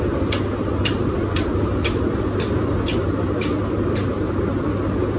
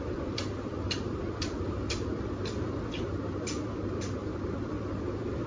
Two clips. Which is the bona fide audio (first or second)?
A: first